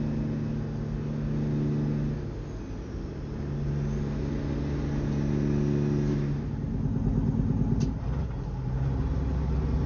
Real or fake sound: real